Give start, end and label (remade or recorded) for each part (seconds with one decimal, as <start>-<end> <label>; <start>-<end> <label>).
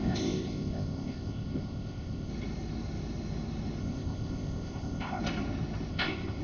0.0-2.3 remade; 2.3-3.8 recorded; 3.8-5.2 remade; 5.2-5.9 recorded; 5.9-6.4 remade